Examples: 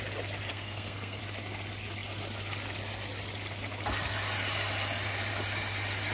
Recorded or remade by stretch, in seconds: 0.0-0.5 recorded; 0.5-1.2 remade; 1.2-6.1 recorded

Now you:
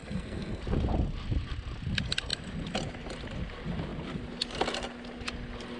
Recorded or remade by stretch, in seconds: 0.0-0.6 remade; 0.6-5.8 recorded

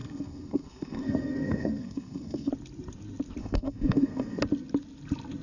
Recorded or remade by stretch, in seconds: 0.0-2.5 remade; 2.5-3.4 recorded; 3.4-4.4 remade; 4.4-5.4 recorded

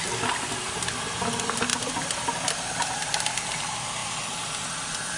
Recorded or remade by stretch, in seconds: 0.0-5.2 recorded

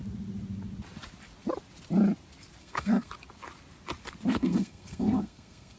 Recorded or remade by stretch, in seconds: 0.0-2.6 recorded; 2.6-3.1 remade; 3.1-4.3 recorded; 4.3-5.8 remade

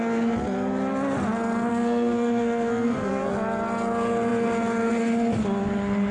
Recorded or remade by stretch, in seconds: 0.0-1.7 recorded; 1.7-3.3 remade; 3.3-6.1 recorded

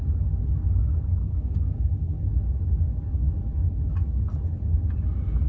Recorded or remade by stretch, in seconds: 0.0-1.2 recorded; 1.2-2.2 remade; 2.2-5.5 recorded

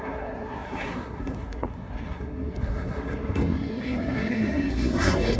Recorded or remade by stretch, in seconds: 0.0-5.4 remade